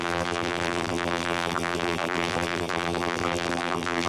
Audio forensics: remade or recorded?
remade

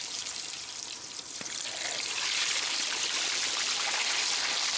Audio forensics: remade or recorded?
remade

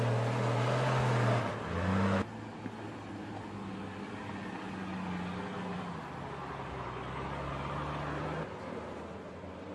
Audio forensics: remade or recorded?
recorded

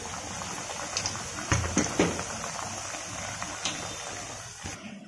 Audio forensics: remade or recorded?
recorded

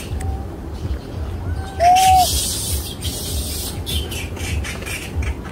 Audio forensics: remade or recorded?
recorded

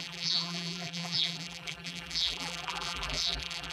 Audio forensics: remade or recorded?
remade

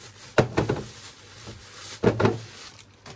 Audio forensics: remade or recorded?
recorded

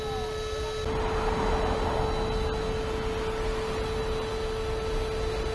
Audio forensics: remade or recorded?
recorded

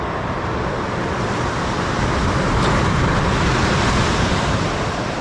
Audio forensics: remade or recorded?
recorded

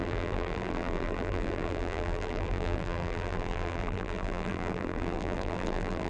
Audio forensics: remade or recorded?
remade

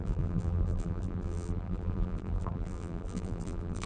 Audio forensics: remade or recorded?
remade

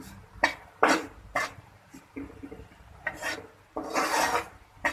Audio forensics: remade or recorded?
remade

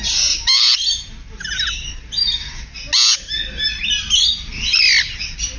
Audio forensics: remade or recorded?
recorded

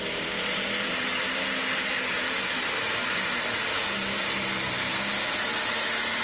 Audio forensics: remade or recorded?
recorded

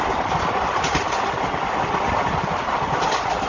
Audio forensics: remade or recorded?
recorded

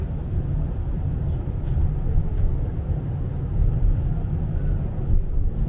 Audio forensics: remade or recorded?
recorded